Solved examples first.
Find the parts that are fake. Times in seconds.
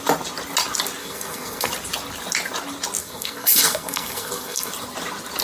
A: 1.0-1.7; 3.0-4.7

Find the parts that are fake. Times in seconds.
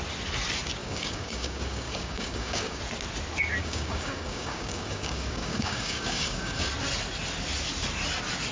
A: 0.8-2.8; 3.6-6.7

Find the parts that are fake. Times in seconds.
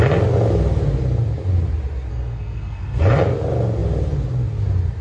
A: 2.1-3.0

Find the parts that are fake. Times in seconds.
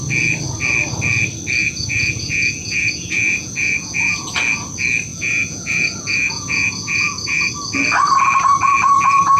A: 1.6-4.4; 5.1-7.5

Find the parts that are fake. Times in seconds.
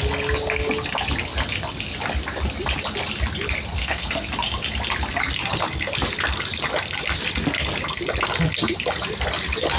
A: 3.8-4.3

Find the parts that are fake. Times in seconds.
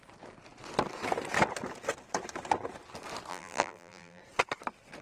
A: 3.3-4.2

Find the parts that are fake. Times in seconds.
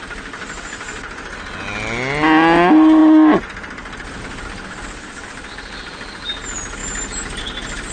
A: none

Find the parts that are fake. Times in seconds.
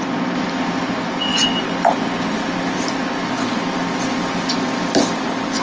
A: none